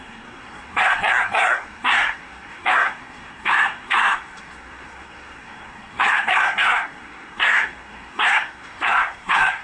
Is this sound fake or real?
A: fake